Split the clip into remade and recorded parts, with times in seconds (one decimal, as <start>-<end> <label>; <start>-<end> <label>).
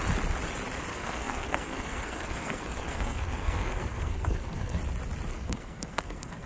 0.0-0.9 recorded; 0.9-4.8 remade; 4.8-5.3 recorded; 5.3-6.5 remade